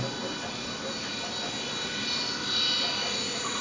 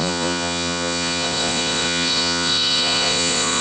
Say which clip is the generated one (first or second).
second